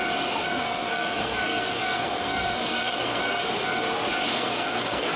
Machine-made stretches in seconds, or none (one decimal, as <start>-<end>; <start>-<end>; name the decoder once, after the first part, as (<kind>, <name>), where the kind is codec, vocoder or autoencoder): 0.4-3.5 (codec, SNAC); 4.3-5.2